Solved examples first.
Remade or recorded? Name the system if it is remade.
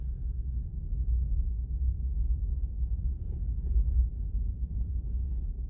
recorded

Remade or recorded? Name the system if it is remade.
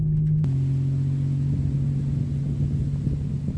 recorded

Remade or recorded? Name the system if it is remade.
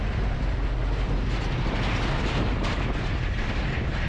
recorded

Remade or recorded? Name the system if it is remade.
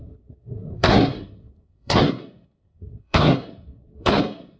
remade, codec, SNAC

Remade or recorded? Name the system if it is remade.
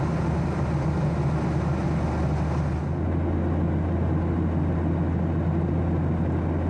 recorded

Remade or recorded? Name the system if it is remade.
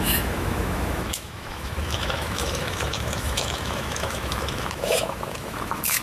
remade, autoencoder, DAC-VAE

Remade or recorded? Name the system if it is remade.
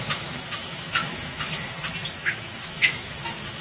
remade, autoencoder, DAC-VAE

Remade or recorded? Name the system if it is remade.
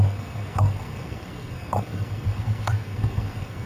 remade, codec, SNAC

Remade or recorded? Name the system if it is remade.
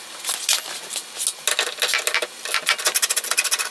recorded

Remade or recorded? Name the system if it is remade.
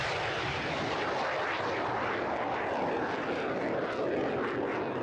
recorded